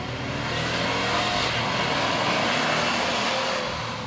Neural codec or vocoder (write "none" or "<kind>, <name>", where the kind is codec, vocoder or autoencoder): none